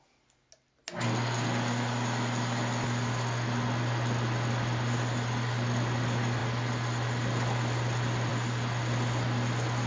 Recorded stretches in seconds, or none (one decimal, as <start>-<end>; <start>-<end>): 0.0-9.9